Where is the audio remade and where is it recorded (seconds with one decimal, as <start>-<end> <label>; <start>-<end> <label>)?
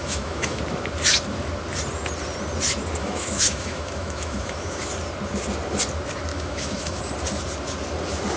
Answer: 0.0-0.6 remade; 0.6-3.0 recorded; 3.0-4.9 remade; 4.9-6.3 recorded; 6.3-7.0 remade; 7.0-8.4 recorded